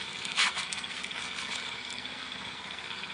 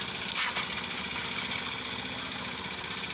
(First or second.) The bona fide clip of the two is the second